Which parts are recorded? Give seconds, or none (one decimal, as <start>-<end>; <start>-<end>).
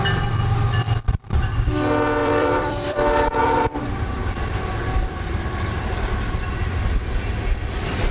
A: 0.0-2.2; 3.8-8.1